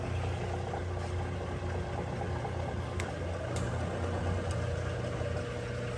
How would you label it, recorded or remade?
recorded